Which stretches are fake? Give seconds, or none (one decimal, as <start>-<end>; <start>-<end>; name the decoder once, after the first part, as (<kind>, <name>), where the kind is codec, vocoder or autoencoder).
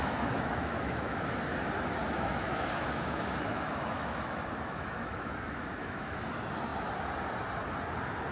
0.0-1.4 (autoencoder, DAC-VAE); 2.0-6.3